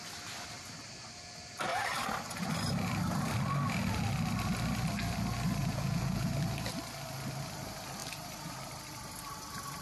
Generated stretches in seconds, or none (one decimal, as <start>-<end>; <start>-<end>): 5.6-6.3